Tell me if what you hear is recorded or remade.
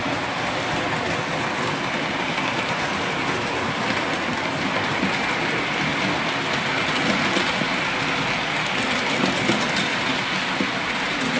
recorded